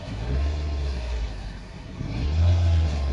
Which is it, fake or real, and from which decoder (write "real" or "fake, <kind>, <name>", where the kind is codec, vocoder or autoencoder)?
fake, codec, SNAC